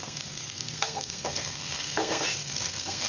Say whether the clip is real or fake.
fake